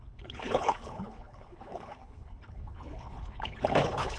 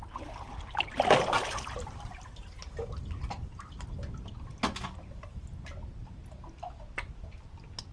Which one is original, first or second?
second